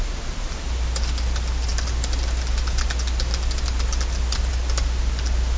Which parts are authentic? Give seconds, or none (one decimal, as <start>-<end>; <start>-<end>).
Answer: 0.0-5.6